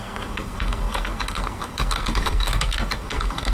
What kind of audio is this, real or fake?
fake